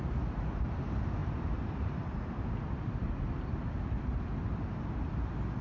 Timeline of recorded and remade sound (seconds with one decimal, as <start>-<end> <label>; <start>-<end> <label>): 0.0-1.2 recorded; 1.2-2.3 remade; 2.3-5.6 recorded